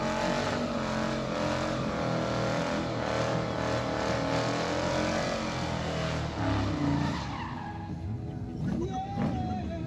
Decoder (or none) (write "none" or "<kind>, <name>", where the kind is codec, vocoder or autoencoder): none